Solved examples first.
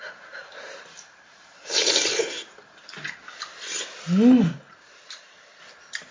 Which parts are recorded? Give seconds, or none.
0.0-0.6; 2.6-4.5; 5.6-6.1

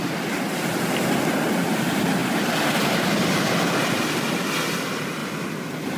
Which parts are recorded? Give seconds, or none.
0.0-2.2; 4.3-6.0

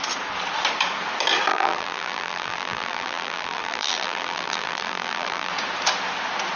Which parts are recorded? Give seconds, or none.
0.0-1.5; 5.5-6.6

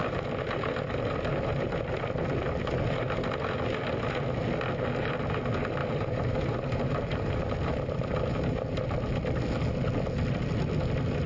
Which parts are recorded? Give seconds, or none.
0.0-5.8; 8.8-11.3

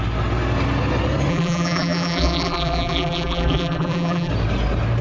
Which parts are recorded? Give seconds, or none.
0.0-1.3; 4.3-5.0

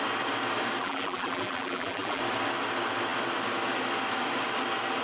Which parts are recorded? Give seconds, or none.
0.0-0.8; 2.2-5.0

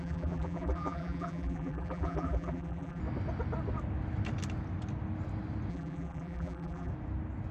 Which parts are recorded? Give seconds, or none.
3.0-5.7; 6.9-7.5

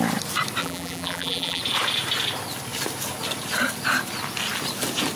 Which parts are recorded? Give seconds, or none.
0.0-0.6; 1.6-5.2